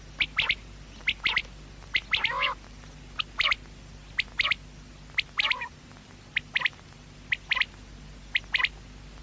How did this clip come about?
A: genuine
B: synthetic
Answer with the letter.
A